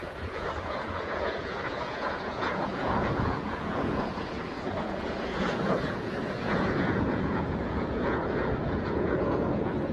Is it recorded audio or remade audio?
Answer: remade